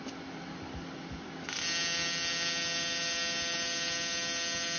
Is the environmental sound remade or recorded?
recorded